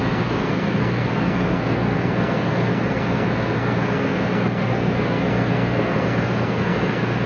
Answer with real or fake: fake